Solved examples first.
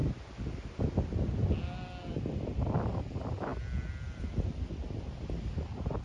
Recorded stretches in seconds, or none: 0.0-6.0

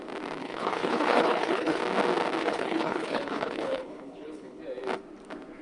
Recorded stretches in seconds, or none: 0.0-0.4; 1.8-2.4; 4.6-5.6

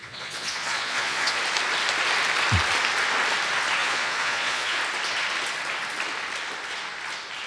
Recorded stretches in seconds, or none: 1.4-3.8; 4.8-7.5

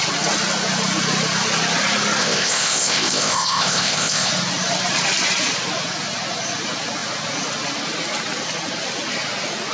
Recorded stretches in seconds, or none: 0.0-2.2; 4.3-9.7

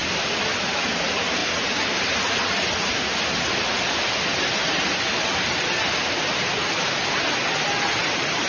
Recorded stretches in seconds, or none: 0.0-8.5

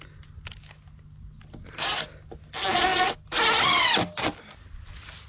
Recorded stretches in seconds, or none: 0.0-5.3

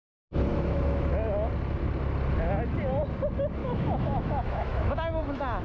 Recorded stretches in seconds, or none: 0.0-0.5; 1.1-3.6

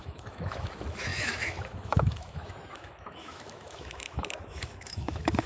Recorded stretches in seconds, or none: none